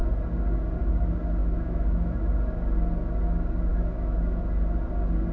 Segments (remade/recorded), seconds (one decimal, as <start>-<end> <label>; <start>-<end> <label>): 0.0-1.4 recorded; 1.4-2.3 remade; 2.3-3.7 recorded; 3.7-4.4 remade; 4.4-5.3 recorded